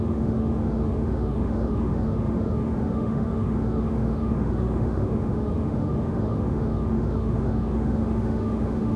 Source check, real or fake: fake